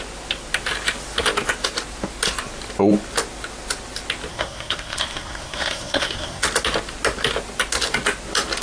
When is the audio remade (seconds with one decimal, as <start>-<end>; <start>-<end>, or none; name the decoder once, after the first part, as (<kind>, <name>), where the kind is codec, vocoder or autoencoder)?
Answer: 4.3-6.4 (codec, SNAC)